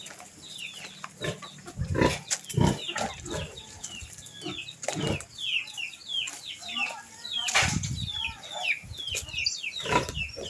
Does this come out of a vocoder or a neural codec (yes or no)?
no